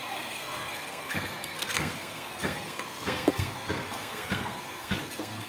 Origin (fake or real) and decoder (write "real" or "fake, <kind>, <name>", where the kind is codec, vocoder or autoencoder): fake, codec, SNAC